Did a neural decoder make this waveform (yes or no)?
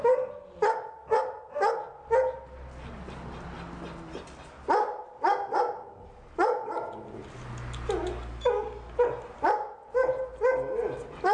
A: no